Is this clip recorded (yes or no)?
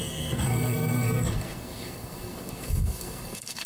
no